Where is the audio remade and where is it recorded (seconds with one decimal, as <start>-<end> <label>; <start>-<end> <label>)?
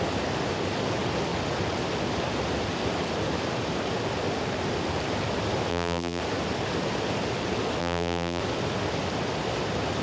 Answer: 0.0-5.7 recorded; 5.7-6.2 remade; 6.2-7.8 recorded; 7.8-8.4 remade; 8.4-10.0 recorded